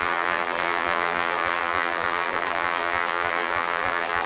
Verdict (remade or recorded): remade